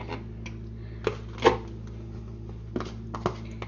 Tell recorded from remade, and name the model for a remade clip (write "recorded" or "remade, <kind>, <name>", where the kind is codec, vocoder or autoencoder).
recorded